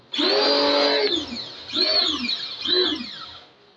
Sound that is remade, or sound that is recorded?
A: recorded